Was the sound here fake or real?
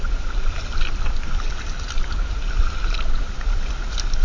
real